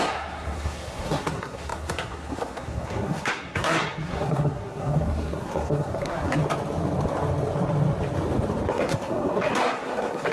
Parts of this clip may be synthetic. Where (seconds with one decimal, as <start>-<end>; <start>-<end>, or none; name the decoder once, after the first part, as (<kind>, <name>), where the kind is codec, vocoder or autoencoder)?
0.0-6.4 (codec, SNAC); 8.7-10.3